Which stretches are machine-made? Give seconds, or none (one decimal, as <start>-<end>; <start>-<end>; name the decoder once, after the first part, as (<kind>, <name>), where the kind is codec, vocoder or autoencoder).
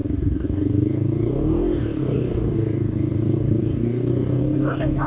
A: 0.0-5.1 (codec, DAC)